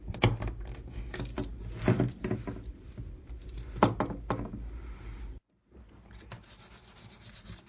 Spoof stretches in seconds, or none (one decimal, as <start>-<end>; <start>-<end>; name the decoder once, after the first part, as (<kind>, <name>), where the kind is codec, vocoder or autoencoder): none